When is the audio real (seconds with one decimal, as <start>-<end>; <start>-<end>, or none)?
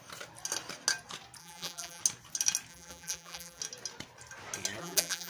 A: 0.0-1.4; 2.0-2.7; 3.6-4.8